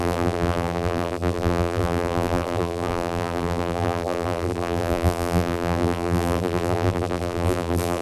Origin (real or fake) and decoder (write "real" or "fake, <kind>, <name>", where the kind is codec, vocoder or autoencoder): fake, vocoder, BigVGAN v2